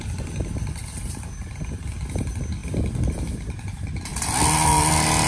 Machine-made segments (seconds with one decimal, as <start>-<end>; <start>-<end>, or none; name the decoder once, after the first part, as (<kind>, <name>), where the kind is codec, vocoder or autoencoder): 0.0-2.6 (vocoder, BigVGAN v2); 3.1-4.1